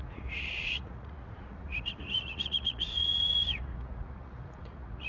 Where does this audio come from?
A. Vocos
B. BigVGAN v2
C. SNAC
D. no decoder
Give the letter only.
A